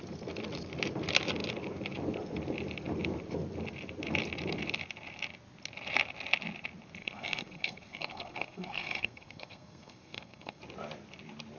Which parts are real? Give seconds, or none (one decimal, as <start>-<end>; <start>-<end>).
0.0-7.0; 10.6-11.6